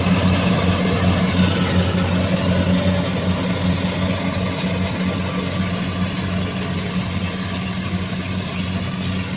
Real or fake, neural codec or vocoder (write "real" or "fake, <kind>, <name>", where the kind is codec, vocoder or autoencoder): real